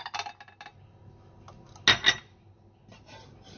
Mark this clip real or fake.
real